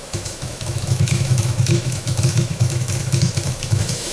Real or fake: fake